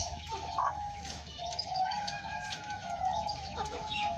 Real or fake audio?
fake